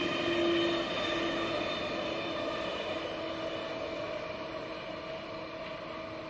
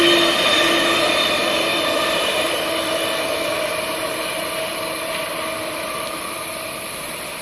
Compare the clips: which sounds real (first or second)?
first